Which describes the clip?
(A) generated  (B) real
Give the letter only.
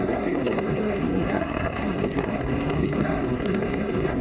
A